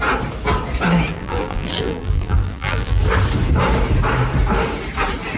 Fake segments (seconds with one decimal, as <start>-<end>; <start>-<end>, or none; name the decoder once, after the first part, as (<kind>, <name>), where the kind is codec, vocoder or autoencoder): 1.1-3.0 (vocoder, BigVGAN v2)